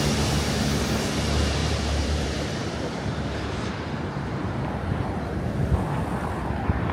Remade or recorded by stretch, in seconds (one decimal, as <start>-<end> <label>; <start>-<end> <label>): 0.0-1.6 recorded; 1.6-5.7 remade; 5.7-6.9 recorded